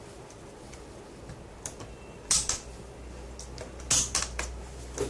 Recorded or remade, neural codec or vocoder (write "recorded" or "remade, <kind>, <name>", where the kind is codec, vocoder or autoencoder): recorded